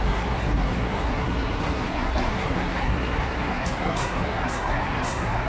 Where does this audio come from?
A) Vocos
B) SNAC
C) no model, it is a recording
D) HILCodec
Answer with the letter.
B